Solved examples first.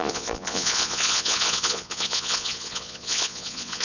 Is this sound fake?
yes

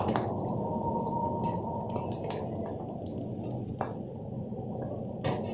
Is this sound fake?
no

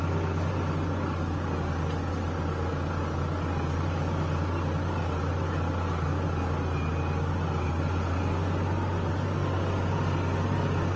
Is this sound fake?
no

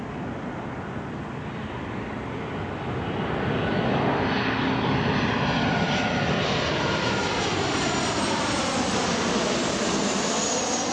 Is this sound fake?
no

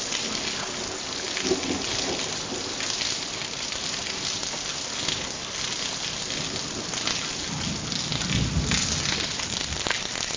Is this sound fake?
no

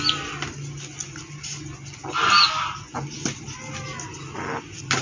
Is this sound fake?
no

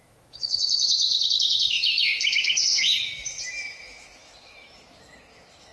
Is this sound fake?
yes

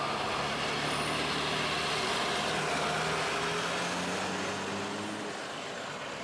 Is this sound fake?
no